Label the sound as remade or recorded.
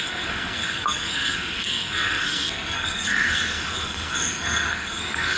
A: remade